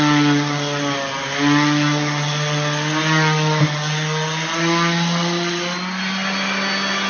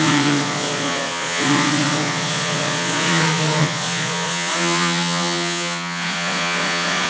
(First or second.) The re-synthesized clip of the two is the second